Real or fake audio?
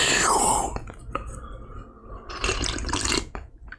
fake